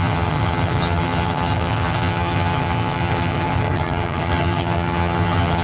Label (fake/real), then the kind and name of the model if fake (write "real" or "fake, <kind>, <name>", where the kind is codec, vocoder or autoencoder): fake, vocoder, HiFi-GAN